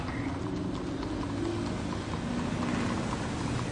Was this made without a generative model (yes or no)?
yes